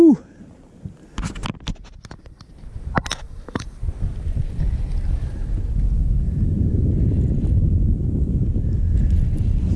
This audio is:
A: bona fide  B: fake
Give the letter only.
A